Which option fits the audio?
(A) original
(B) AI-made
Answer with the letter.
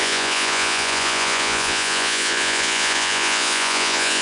B